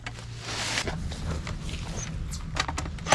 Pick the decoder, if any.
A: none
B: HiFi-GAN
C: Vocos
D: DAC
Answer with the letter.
A